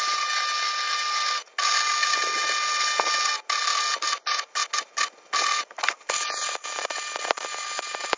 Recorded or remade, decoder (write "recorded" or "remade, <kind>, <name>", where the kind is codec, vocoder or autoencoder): recorded